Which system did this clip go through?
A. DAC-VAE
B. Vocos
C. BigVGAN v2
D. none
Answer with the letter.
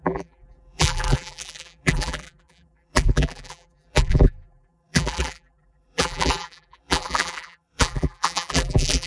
C